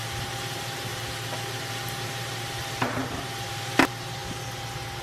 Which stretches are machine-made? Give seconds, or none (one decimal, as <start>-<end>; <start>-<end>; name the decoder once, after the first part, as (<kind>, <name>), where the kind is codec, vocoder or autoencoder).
0.0-0.9 (vocoder, BigVGAN v2); 1.6-4.2